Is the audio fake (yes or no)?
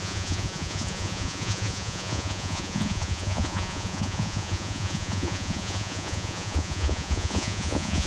yes